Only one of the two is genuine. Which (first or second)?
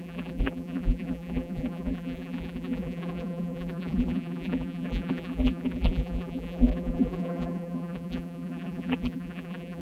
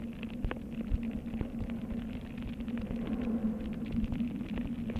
second